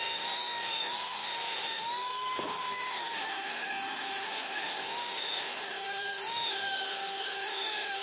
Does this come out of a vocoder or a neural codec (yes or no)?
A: yes